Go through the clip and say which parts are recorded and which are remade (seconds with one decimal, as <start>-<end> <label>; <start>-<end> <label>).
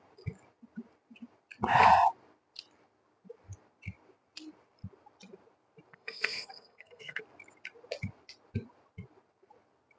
0.0-5.9 recorded; 5.9-7.2 remade; 7.2-10.0 recorded